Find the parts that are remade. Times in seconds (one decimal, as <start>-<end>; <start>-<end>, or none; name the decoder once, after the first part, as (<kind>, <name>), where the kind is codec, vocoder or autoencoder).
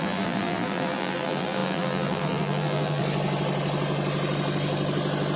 0.0-3.0 (vocoder, BigVGAN v2)